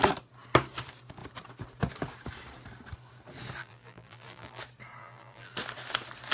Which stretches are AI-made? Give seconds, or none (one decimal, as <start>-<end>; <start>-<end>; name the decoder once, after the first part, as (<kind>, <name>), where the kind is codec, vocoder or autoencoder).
3.6-4.6 (vocoder, BigVGAN v2); 5.0-5.5